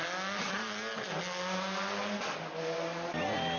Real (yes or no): yes